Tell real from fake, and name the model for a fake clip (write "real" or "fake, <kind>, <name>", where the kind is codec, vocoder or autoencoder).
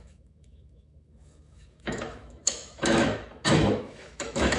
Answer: fake, autoencoder, DAC-VAE